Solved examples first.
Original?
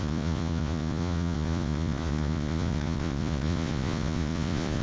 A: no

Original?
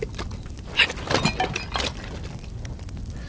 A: yes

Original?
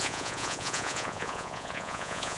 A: no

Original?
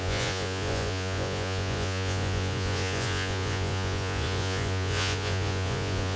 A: no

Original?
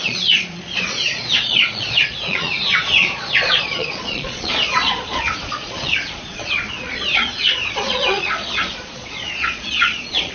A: no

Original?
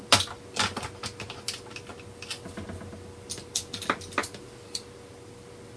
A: yes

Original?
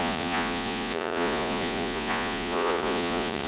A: no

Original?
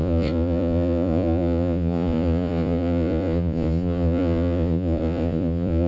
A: no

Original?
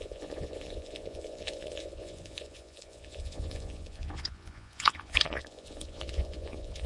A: no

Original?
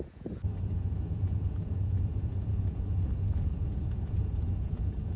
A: no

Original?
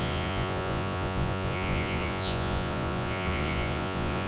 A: no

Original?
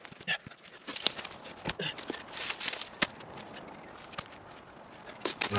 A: yes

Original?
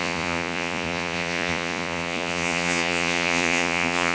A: no